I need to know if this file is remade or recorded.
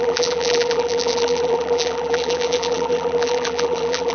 remade